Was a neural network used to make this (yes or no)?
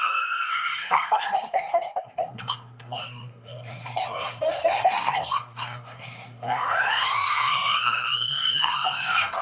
yes